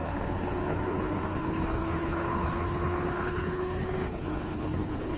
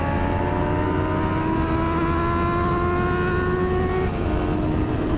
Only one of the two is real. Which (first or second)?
second